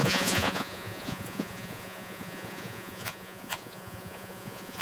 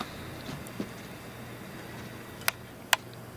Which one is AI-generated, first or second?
first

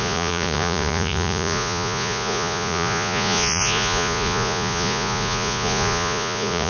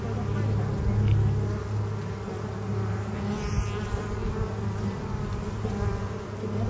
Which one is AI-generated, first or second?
first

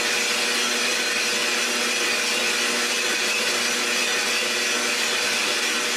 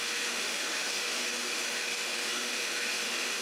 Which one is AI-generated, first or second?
second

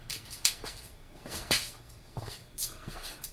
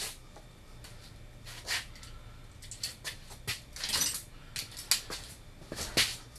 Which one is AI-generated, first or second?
first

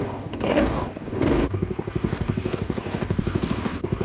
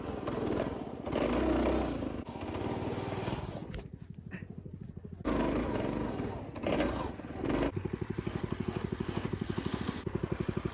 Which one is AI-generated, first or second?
first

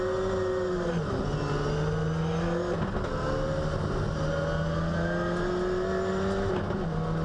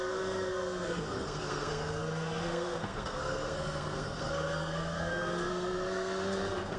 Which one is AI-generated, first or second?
second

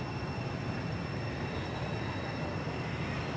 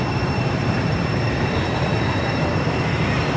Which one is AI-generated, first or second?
second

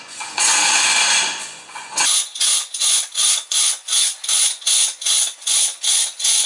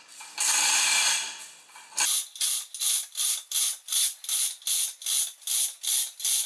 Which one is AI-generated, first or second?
first